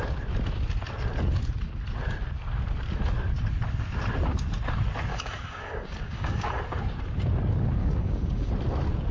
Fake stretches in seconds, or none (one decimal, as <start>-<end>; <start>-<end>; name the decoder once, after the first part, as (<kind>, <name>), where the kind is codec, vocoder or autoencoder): 5.1-6.6 (codec, DAC); 7.8-8.5